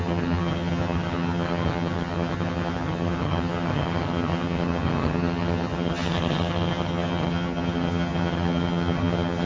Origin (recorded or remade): remade